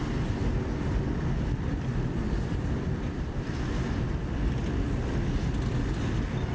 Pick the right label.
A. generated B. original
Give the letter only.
B